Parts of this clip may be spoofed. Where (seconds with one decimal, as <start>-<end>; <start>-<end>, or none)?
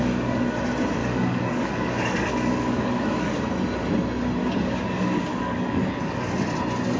0.0-0.6; 1.0-3.4; 4.4-5.9